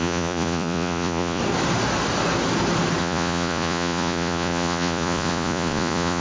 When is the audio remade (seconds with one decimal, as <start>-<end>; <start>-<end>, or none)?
0.0-1.4; 3.0-6.2

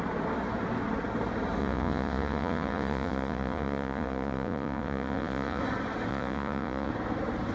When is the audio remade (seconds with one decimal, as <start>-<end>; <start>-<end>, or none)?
1.6-5.6; 6.1-6.9

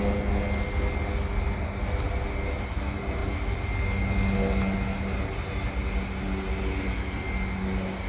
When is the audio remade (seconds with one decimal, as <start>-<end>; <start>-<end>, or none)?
none

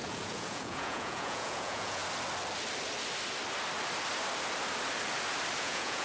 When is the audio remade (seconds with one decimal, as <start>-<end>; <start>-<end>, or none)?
0.0-2.0; 5.6-6.0